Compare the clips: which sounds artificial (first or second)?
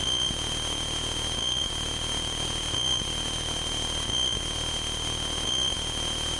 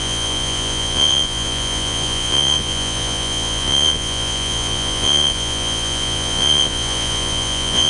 second